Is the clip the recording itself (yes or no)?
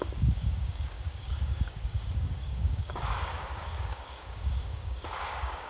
no